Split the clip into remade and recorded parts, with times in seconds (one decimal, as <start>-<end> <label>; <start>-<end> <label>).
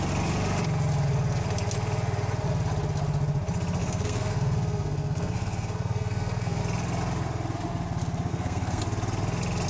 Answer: 0.0-3.8 recorded; 3.8-6.6 remade; 6.6-8.3 recorded; 8.3-8.8 remade; 8.8-9.7 recorded